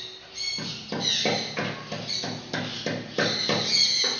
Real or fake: real